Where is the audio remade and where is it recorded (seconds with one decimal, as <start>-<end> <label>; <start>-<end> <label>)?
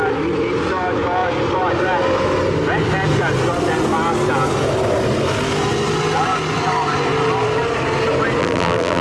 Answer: 0.0-8.4 recorded; 8.4-9.0 remade